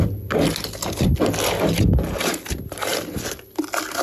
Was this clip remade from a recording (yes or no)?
no